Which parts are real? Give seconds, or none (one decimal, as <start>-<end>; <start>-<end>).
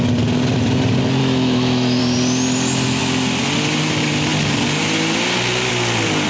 0.0-1.2; 2.0-6.3